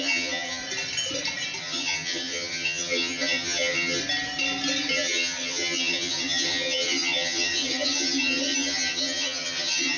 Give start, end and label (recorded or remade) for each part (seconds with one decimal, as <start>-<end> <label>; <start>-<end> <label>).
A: 0.0-0.6 remade; 0.6-1.6 recorded; 1.6-4.0 remade; 4.0-4.9 recorded; 4.9-10.0 remade